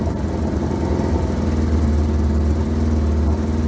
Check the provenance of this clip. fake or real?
real